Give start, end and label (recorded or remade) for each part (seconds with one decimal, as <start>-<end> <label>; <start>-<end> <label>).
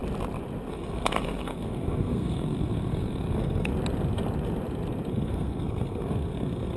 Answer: 0.0-0.7 recorded; 0.7-3.7 remade; 3.7-5.1 recorded; 5.1-6.8 remade